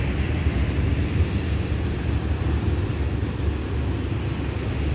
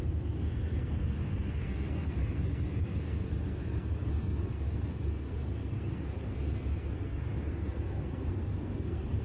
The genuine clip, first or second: first